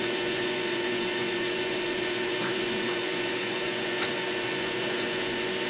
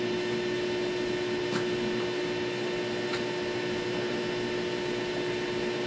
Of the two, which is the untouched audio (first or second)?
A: second